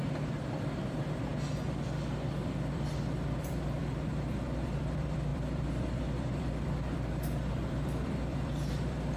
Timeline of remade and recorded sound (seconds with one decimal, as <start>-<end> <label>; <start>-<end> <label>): 0.0-1.3 remade; 1.3-2.3 recorded; 2.3-9.2 remade

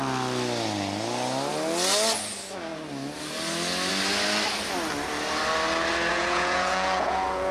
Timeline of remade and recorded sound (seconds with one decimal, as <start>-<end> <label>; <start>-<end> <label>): 0.0-6.1 recorded; 6.1-7.5 remade